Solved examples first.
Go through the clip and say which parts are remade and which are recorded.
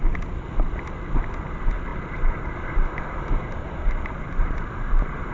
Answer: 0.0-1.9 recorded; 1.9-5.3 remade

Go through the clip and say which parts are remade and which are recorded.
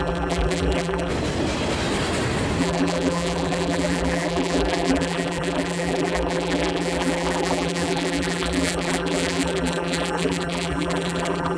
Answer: 0.0-1.1 remade; 1.1-2.6 recorded; 2.6-11.6 remade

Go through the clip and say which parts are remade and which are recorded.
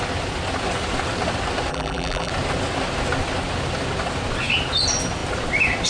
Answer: 0.0-1.7 recorded; 1.7-2.3 remade; 2.3-5.9 recorded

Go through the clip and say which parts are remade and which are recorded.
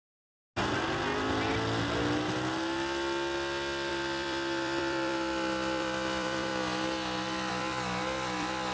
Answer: 0.0-3.9 recorded; 3.9-6.5 remade; 6.5-7.5 recorded; 7.5-8.7 remade